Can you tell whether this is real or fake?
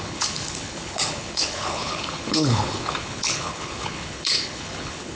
fake